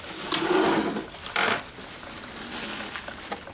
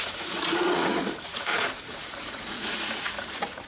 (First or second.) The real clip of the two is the first